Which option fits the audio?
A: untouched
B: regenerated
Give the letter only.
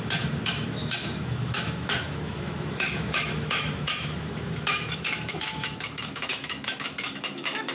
B